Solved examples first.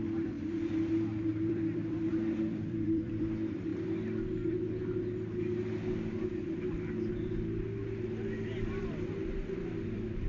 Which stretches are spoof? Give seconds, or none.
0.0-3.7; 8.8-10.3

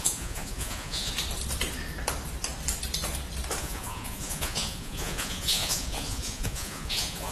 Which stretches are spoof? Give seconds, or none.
0.0-1.1; 3.6-7.3